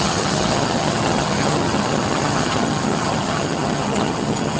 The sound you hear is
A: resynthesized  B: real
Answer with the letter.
A